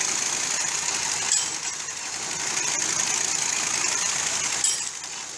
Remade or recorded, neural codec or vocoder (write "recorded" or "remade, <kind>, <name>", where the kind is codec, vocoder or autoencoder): recorded